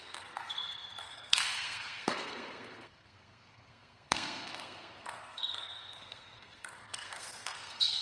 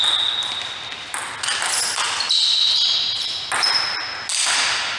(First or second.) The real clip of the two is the second